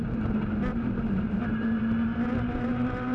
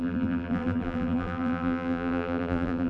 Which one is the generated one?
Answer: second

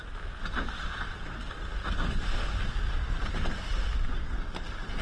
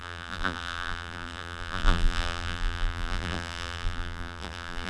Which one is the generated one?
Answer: second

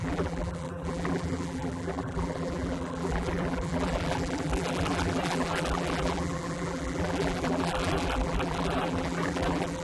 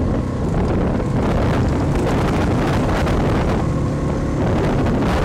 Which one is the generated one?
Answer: first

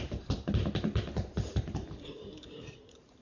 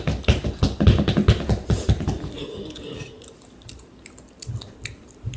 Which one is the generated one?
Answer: first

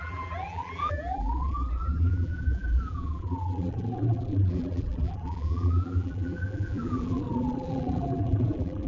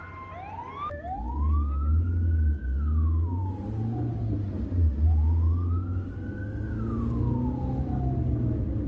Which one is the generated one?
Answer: first